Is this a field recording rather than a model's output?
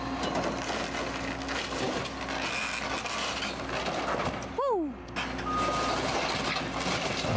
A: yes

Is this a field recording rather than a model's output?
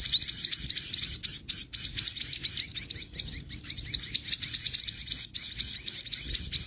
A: yes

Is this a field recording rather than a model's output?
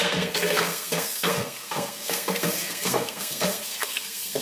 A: no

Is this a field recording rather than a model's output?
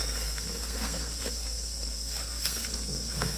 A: no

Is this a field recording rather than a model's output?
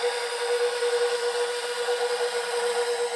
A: yes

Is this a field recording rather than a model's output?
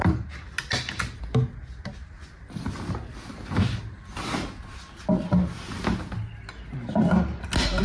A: yes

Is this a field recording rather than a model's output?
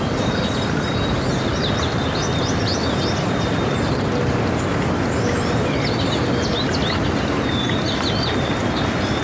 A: yes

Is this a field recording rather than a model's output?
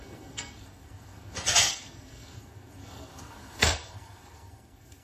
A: no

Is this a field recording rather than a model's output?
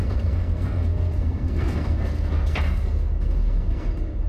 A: no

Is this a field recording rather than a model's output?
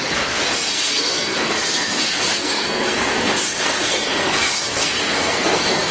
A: no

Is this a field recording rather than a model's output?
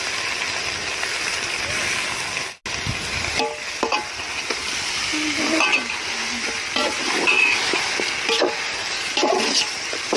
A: yes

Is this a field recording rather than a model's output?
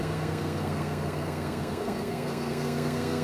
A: no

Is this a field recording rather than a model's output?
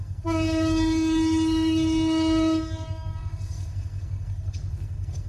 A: no